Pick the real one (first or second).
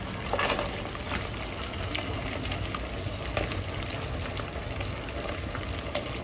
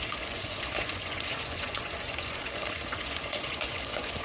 first